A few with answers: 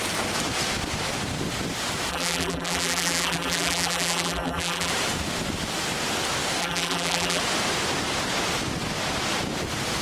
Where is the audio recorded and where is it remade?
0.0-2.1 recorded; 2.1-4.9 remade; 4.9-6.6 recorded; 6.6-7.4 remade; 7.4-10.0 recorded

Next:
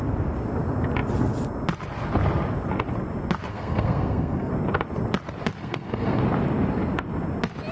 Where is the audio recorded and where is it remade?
0.0-3.5 recorded; 3.5-4.5 remade; 4.5-5.6 recorded; 5.6-6.2 remade; 6.2-7.7 recorded